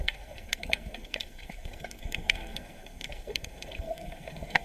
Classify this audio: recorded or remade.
remade